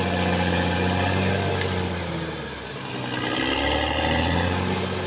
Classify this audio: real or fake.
real